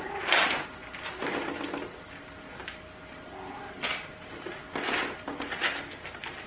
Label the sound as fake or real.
real